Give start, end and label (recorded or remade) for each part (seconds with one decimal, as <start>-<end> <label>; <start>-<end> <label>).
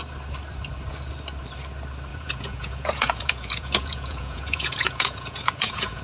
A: 0.0-2.1 recorded; 2.1-6.0 remade